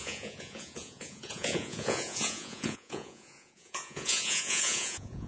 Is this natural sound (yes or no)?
no